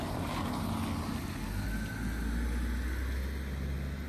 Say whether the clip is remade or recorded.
recorded